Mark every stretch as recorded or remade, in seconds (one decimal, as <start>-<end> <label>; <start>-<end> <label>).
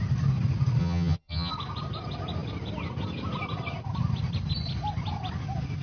0.0-0.8 recorded; 0.8-1.5 remade; 1.5-5.8 recorded